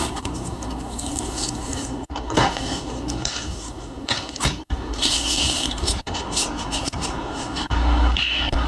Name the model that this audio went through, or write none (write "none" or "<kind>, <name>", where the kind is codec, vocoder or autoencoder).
codec, SNAC